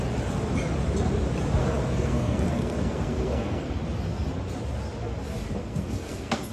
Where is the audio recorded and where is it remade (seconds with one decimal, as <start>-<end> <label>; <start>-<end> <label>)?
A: 0.0-1.6 recorded; 1.6-3.7 remade; 3.7-5.6 recorded; 5.6-6.5 remade